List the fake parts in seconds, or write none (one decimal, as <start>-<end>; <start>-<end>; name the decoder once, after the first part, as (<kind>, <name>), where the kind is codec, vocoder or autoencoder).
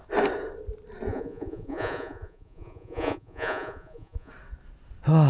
1.1-4.3 (vocoder, Vocos)